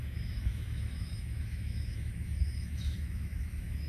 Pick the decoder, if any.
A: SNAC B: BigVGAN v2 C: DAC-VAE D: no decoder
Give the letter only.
C